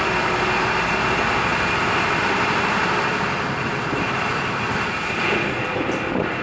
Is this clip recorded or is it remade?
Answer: remade